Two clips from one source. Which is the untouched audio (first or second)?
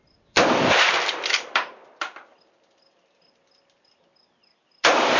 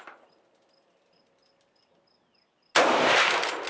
second